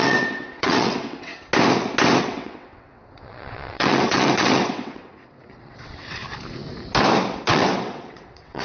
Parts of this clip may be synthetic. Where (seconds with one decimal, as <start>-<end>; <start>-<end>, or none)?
0.0-1.3; 2.2-6.2; 7.4-8.6